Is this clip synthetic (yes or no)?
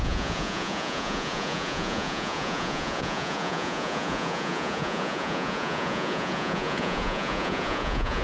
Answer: yes